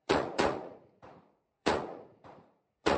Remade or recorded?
remade